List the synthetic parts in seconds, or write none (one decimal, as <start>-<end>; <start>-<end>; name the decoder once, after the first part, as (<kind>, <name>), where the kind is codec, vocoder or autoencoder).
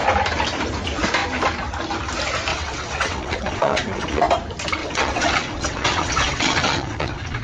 2.5-4.2 (vocoder, WaveNeXt); 4.8-7.4